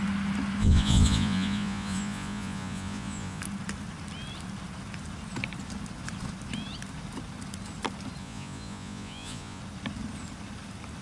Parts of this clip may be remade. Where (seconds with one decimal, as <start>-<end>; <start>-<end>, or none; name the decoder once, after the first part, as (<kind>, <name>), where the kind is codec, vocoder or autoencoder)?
0.6-3.4 (vocoder, Vocos); 8.2-9.6